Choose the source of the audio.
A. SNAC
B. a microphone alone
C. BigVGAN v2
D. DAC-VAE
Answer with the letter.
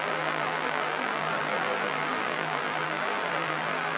C